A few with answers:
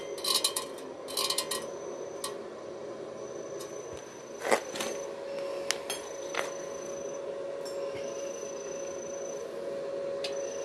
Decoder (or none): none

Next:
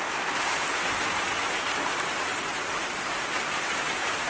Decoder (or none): vocoder, BigVGAN v2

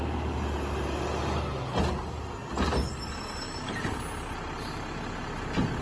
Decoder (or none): none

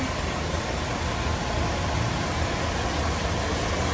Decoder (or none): none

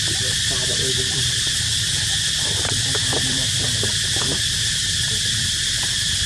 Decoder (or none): none